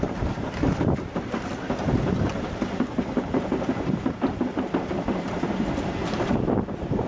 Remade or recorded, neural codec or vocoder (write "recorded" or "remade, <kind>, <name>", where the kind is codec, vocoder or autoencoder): remade, vocoder, BigVGAN v2